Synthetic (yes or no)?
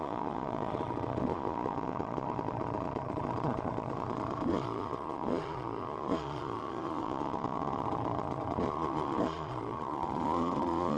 yes